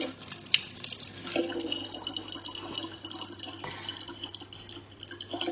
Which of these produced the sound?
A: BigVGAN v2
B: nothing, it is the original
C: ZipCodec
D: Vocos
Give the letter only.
B